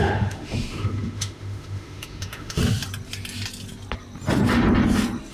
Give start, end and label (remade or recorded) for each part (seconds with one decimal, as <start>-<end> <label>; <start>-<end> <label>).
0.0-2.6 remade; 2.6-5.3 recorded